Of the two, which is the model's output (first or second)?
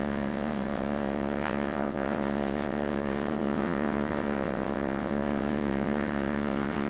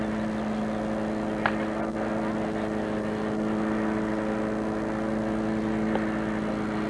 first